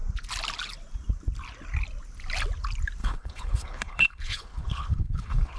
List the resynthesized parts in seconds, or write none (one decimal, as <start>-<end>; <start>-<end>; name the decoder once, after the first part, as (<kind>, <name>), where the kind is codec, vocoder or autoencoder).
3.0-5.6 (codec, HILCodec)